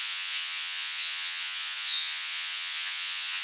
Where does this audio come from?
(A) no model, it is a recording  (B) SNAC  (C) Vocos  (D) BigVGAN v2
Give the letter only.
C